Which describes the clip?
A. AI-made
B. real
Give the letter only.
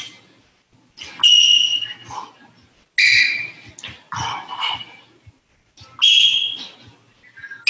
B